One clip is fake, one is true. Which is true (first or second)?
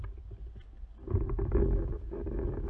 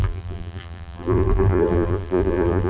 first